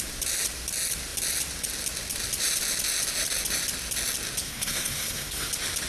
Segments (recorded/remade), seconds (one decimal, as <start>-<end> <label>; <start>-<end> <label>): 0.0-4.4 recorded; 4.4-5.5 remade; 5.5-5.9 recorded